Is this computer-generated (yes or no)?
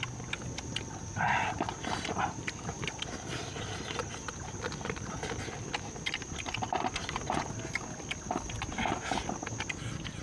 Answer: no